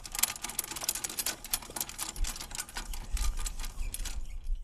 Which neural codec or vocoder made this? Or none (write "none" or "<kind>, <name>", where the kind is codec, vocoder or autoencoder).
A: none